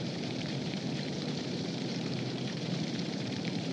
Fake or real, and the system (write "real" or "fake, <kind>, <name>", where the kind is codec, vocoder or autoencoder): fake, vocoder, BigVGAN v2